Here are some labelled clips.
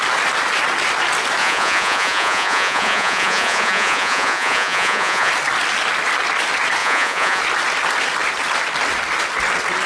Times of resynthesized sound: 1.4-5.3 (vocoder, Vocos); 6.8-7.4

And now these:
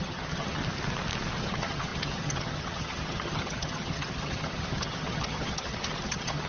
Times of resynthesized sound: 0.0-0.6 (vocoder, HiFi-GAN); 1.4-6.5

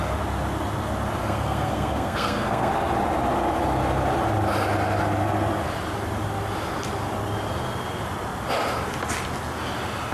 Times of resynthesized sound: 1.2-2.7 (codec, SNAC)

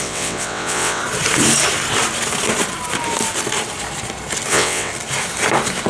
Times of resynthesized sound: 0.0-1.0 (vocoder, WaveNeXt); 4.5-4.9

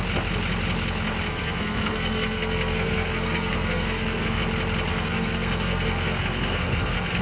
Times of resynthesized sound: 1.3-4.4 (codec, SNAC); 4.9-7.2